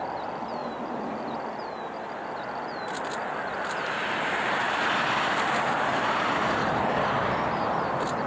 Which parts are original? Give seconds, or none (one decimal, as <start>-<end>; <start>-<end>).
0.0-8.3